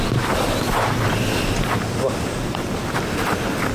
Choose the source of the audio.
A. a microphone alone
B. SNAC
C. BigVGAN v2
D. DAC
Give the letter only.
A